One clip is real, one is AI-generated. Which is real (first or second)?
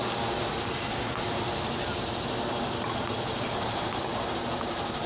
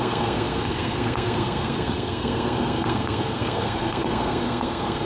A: first